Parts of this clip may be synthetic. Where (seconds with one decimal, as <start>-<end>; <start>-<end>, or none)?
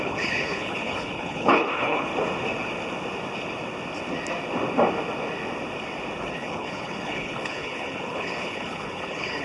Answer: 0.0-2.1; 6.2-9.4